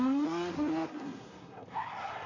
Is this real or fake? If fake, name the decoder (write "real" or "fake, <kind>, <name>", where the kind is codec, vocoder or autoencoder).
fake, codec, SNAC